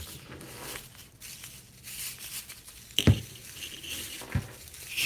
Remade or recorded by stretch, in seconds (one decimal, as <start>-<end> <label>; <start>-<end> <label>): 0.0-5.1 recorded